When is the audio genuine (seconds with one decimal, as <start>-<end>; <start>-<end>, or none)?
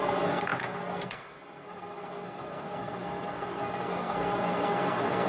none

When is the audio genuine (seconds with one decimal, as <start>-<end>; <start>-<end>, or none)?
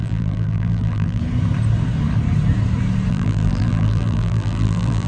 1.2-3.1